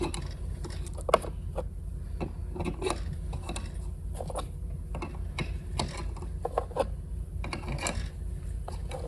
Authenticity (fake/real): real